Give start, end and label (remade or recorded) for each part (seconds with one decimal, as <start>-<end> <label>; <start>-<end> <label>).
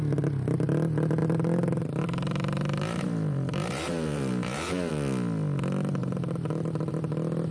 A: 0.0-1.2 recorded; 1.2-4.9 remade; 4.9-6.0 recorded; 6.0-6.9 remade; 6.9-7.5 recorded